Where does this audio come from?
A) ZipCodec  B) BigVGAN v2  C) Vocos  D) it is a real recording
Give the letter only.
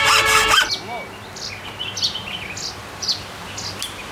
D